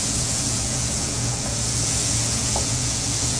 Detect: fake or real fake